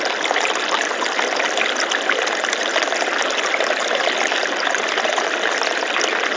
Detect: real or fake real